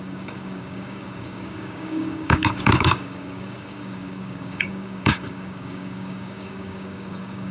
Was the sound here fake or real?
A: fake